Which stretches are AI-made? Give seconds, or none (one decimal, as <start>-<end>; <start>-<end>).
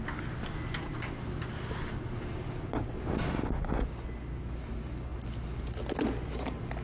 none